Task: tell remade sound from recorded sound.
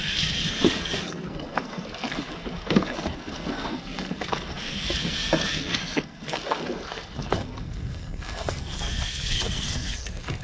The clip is remade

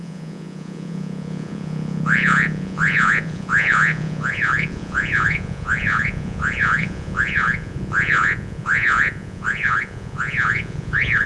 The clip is remade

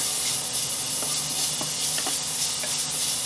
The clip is recorded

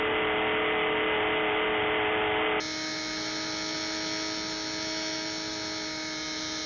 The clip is recorded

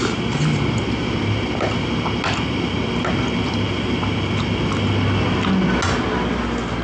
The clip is recorded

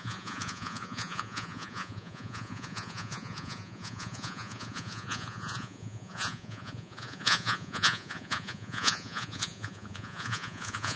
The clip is remade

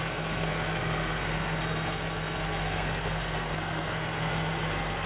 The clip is remade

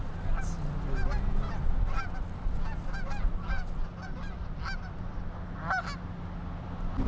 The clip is recorded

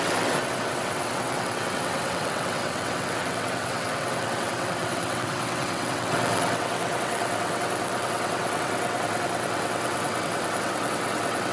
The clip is remade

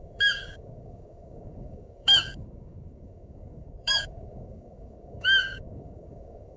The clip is remade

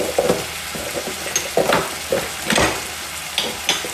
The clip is recorded